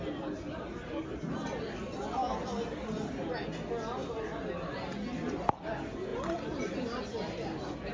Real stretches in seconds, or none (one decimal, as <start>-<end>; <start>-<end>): 0.0-4.0; 4.7-7.9